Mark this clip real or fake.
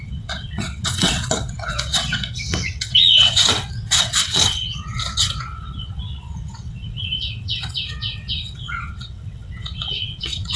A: fake